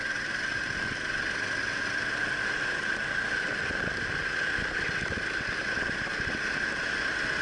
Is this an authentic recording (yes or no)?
yes